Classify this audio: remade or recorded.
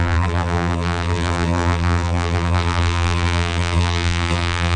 remade